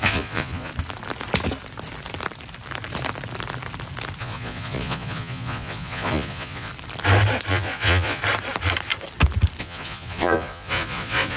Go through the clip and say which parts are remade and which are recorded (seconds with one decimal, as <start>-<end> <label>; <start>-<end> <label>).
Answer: 0.0-0.7 remade; 0.7-4.2 recorded; 4.2-6.7 remade; 6.7-7.5 recorded; 7.5-8.2 remade; 8.2-9.6 recorded; 9.6-11.4 remade

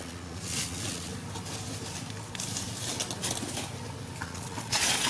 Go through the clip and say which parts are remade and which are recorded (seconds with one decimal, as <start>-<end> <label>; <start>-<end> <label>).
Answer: 0.0-1.1 remade; 1.1-4.2 recorded; 4.2-5.1 remade

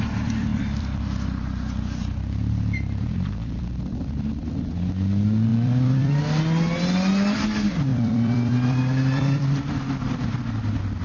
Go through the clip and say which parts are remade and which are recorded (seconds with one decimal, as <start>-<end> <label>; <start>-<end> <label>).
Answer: 0.0-0.5 recorded; 0.5-4.5 remade; 4.5-5.5 recorded; 5.5-6.2 remade; 6.2-7.9 recorded; 7.9-10.4 remade; 10.4-11.0 recorded